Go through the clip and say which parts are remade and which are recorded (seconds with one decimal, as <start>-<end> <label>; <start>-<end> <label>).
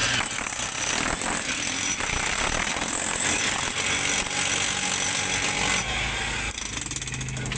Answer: 0.0-7.6 recorded